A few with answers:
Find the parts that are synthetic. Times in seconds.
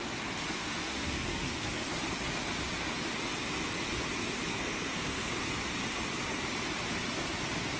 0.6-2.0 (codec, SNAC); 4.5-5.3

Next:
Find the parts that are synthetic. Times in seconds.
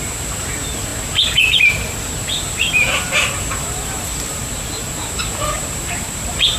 0.0-6.6 (vocoder, BigVGAN v2)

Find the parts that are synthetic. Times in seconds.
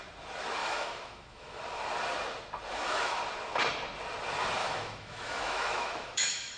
0.6-1.6 (autoencoder, DAC-VAE); 2.7-3.2; 4.6-6.6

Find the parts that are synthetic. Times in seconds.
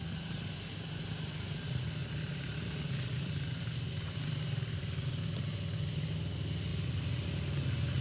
2.0-6.1 (vocoder, BigVGAN v2)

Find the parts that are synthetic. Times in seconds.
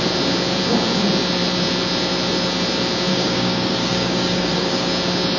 3.1-4.9 (codec, DAC)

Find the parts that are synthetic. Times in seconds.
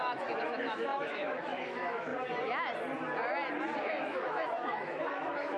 0.0-2.1 (autoencoder, DAC-VAE); 3.8-5.6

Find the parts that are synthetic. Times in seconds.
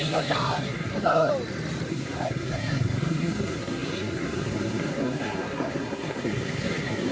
0.0-1.3 (codec, SNAC); 1.9-7.1